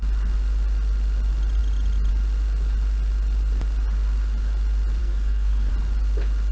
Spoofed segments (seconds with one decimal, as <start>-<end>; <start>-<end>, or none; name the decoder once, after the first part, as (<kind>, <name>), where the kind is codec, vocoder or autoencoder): 5.0-5.7 (codec, SNAC)